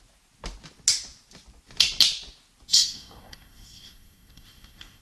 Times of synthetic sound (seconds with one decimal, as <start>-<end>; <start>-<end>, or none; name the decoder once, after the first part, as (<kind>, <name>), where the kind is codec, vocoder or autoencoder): 2.7-5.0 (codec, SNAC)